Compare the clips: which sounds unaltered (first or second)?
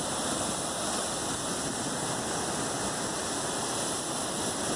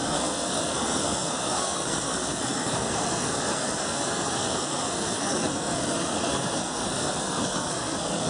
first